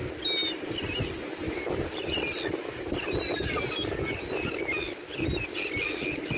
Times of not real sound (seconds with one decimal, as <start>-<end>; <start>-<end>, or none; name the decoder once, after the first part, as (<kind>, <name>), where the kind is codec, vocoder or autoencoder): none